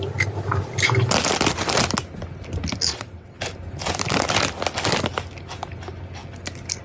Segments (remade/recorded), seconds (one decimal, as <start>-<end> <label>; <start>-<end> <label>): 0.0-2.9 recorded; 2.9-3.4 remade; 3.4-6.8 recorded